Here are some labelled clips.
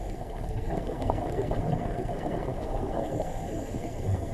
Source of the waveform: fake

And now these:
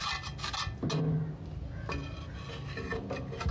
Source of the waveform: real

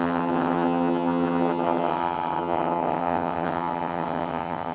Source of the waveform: fake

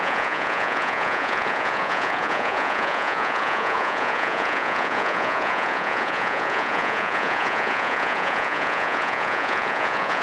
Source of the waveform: fake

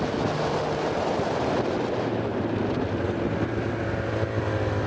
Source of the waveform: real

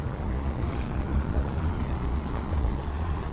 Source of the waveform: fake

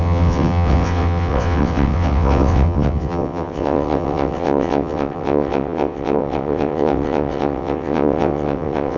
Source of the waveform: fake